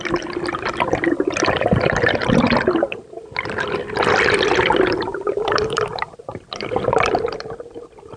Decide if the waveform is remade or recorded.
remade